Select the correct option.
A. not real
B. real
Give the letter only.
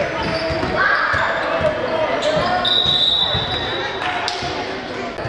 B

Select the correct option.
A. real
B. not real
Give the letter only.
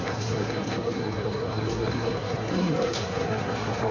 B